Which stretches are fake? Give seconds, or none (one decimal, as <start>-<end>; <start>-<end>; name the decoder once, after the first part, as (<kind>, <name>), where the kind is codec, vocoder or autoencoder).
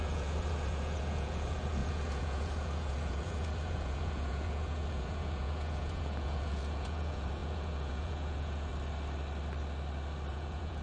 0.0-8.7 (vocoder, Vocos); 10.3-10.8